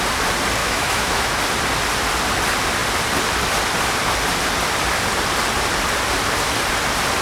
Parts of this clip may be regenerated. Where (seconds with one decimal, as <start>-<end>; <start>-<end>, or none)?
0.6-1.4